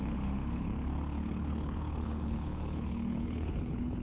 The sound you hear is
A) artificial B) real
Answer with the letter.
A